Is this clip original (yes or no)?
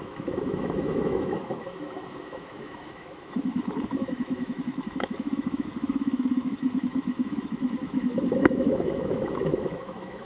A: no